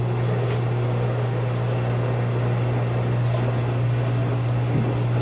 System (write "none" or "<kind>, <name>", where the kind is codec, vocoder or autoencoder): none